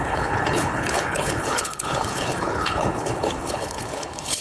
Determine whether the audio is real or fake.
fake